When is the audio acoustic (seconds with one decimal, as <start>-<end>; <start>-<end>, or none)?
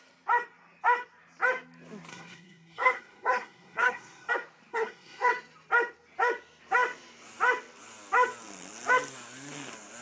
0.0-2.1; 4.3-4.7; 5.3-10.0